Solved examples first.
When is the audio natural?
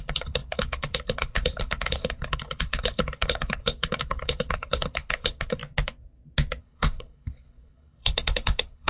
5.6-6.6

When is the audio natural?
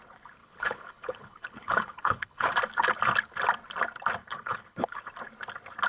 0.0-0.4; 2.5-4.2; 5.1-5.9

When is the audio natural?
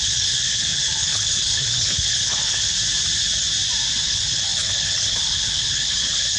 2.7-4.0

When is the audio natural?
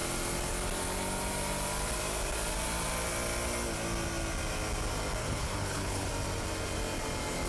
0.0-5.2; 6.1-7.5